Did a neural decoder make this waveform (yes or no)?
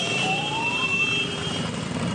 yes